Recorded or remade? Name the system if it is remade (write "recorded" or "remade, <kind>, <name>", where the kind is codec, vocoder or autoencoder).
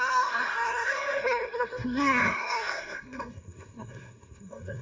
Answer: remade, codec, SNAC